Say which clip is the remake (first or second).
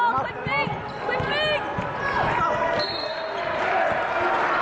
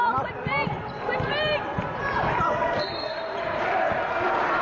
second